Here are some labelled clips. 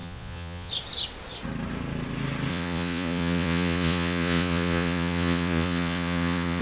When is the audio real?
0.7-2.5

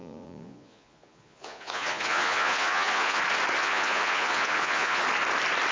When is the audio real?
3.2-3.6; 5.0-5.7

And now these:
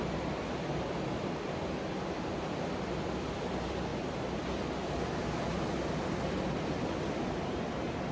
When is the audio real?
0.0-8.1

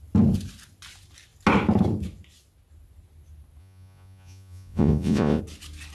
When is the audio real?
0.0-3.6; 5.4-5.9